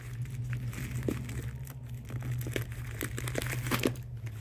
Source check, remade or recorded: recorded